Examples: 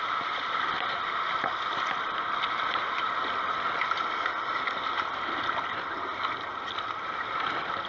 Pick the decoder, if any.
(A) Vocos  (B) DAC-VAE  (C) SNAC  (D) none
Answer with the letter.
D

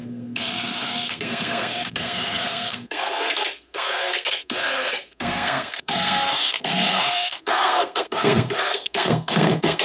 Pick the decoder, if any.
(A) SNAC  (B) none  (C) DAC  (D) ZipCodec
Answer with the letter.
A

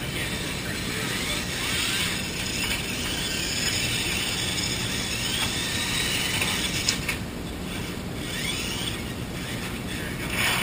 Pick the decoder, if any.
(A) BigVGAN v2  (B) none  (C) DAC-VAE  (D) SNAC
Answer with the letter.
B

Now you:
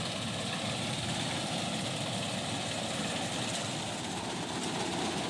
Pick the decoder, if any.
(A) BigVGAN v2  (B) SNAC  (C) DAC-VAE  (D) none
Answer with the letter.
D